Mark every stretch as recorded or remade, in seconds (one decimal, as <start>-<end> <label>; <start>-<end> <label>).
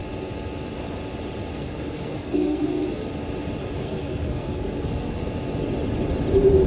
0.0-1.5 recorded; 1.5-3.1 remade; 3.1-3.6 recorded; 3.6-5.2 remade; 5.2-6.7 recorded